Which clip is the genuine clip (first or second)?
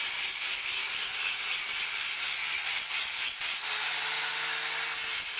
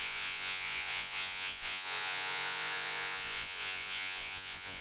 first